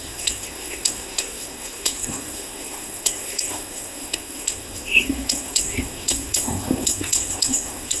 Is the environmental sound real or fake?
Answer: fake